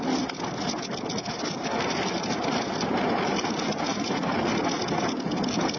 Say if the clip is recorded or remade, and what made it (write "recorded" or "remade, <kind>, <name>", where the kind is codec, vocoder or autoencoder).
recorded